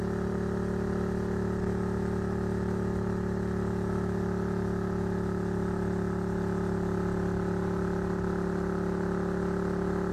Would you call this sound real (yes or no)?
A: yes